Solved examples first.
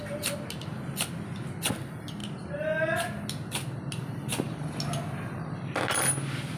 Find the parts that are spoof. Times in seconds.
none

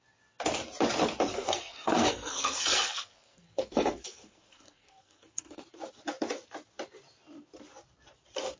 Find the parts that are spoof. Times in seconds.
1.3-5.6 (codec, SNAC)

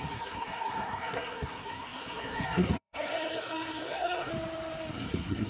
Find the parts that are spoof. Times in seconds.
0.0-4.3 (codec, SNAC); 4.9-5.5

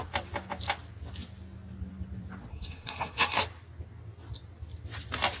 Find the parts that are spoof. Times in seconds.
2.5-3.4 (codec, SNAC)

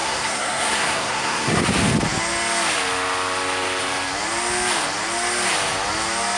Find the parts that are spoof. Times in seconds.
0.0-1.6 (codec, SNAC)

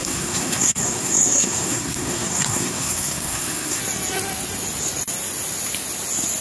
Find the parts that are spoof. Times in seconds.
0.0-3.8 (codec, SNAC)

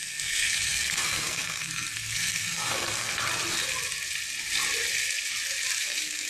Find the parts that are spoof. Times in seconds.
0.0-3.1 (codec, SNAC); 5.8-6.3

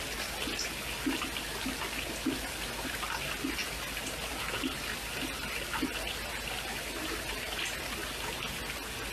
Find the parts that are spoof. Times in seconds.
none